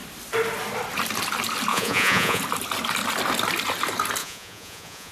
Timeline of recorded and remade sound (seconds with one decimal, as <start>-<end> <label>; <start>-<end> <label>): 0.0-1.7 recorded; 1.7-2.4 remade; 2.4-4.2 recorded; 4.2-5.1 remade